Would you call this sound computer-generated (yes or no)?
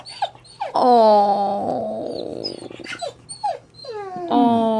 no